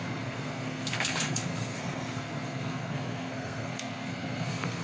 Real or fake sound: fake